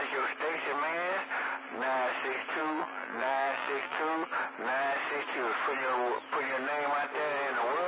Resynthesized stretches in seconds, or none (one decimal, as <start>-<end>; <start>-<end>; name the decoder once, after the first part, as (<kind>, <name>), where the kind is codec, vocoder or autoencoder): 2.6-4.0 (vocoder, BigVGAN v2)

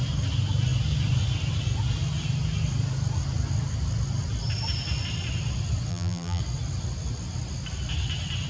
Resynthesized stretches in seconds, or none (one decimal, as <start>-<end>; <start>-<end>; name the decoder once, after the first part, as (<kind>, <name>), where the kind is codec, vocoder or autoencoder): 5.9-6.4 (vocoder, BigVGAN v2)

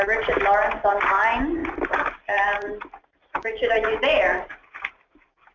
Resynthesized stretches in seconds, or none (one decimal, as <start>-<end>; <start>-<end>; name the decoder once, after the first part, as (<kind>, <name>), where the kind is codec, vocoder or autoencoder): 1.6-4.9 (vocoder, BigVGAN v2)